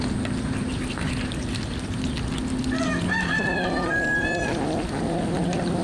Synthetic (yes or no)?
no